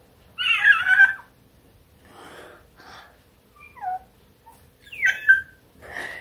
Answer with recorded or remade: recorded